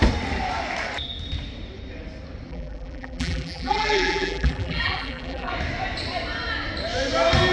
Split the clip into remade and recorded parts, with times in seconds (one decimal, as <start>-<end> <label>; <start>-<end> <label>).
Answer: 0.0-2.5 recorded; 2.5-5.5 remade; 5.5-7.5 recorded